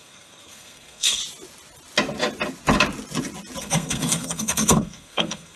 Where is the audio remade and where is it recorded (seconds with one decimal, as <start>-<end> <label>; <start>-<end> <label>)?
0.0-1.2 remade; 1.2-3.6 recorded; 3.6-5.6 remade